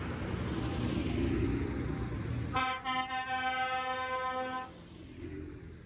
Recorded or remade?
recorded